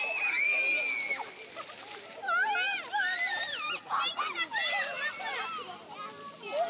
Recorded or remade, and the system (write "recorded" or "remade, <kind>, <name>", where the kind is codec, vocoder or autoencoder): recorded